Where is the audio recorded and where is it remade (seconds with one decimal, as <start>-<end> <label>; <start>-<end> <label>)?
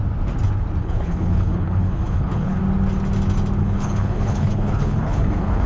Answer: 0.0-0.8 recorded; 0.8-2.6 remade; 2.6-3.6 recorded; 3.6-5.7 remade